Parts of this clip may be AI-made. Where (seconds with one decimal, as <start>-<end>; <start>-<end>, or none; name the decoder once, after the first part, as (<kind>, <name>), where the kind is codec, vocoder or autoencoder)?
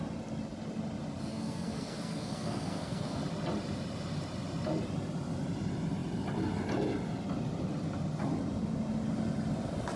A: 1.3-3.2 (codec, SNAC)